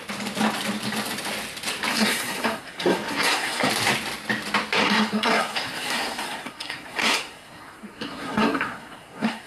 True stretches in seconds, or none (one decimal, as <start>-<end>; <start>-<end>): 0.0-1.9; 3.7-4.8